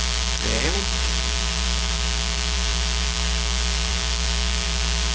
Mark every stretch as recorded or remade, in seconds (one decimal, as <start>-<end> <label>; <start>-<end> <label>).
0.0-5.1 remade